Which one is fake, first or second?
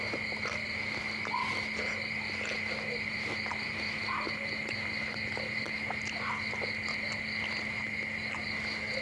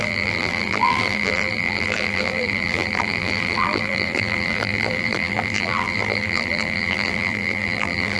second